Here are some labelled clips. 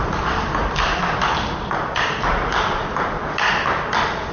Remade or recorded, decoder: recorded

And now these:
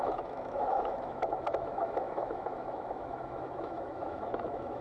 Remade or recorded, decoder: remade, autoencoder, DAC-VAE